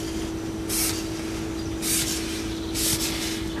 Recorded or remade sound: recorded